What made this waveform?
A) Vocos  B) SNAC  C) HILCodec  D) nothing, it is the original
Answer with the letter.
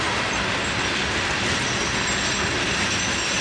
D